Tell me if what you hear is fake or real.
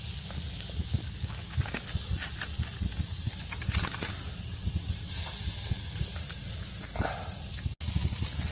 real